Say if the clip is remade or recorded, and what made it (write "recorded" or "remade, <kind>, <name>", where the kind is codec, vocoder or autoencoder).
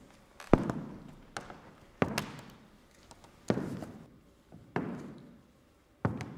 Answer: recorded